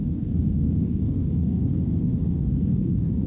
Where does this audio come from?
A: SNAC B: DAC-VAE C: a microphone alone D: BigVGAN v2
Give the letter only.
A